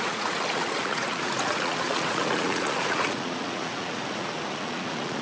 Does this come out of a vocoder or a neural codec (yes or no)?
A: yes